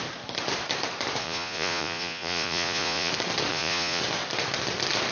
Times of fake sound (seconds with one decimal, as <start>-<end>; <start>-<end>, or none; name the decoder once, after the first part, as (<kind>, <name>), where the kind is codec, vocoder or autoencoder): 1.2-3.1 (vocoder, Vocos); 3.5-4.0